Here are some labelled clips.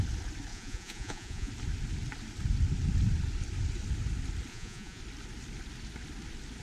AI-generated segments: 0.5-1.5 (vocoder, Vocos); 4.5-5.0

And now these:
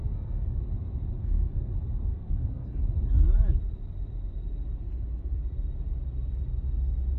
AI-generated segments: 0.0-0.6 (codec, SNAC); 1.2-1.7; 2.1-2.8

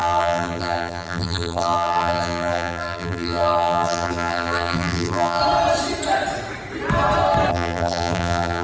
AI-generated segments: 0.0-5.4 (vocoder, BigVGAN v2); 7.5-8.6

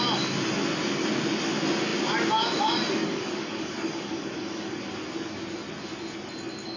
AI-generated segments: 3.0-4.8 (codec, DAC)

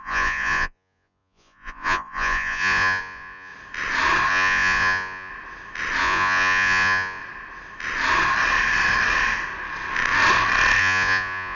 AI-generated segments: 0.0-3.5 (vocoder, Vocos); 4.3-5.3; 6.0-7.2; 10.8-11.5

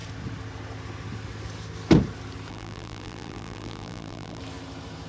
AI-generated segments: 2.5-4.4 (vocoder, BigVGAN v2)